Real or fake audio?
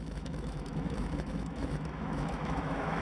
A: fake